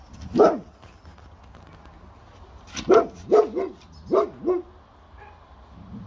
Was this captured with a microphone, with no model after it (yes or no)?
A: yes